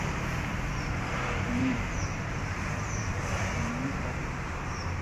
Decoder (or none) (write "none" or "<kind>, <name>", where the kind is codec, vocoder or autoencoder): vocoder, BigVGAN v2